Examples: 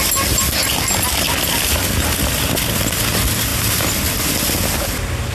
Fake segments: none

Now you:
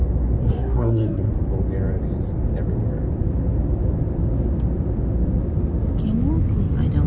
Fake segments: 0.4-1.3 (codec, SNAC)

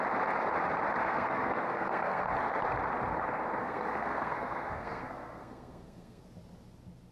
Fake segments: 1.0-2.3 (codec, SNAC); 3.6-6.2

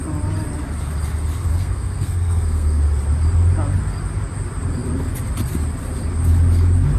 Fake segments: 1.5-2.8 (codec, SNAC)

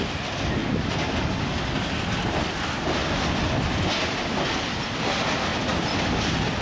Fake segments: none

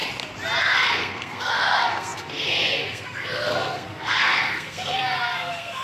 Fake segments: 0.6-5.8 (codec, SNAC)

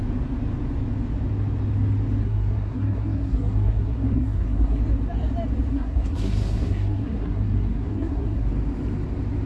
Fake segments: 2.2-4.8 (codec, SNAC); 5.7-8.5

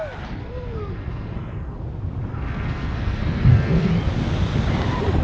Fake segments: 0.4-1.8 (codec, SNAC); 2.3-3.9